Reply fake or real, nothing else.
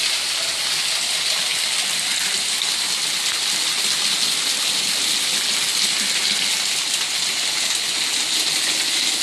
real